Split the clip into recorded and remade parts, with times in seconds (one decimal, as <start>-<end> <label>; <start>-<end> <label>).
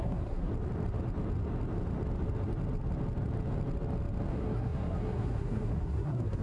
0.0-0.5 remade; 0.5-4.3 recorded; 4.3-6.4 remade